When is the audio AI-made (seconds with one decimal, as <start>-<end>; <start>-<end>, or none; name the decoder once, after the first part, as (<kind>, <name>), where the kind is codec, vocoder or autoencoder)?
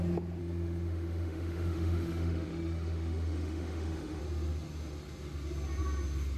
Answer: 0.4-4.2 (autoencoder, DAC-VAE)